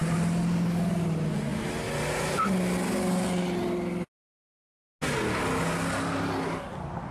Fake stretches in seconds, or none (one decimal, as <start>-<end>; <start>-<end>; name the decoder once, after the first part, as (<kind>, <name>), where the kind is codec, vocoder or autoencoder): none